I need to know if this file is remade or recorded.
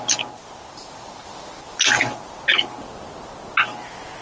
recorded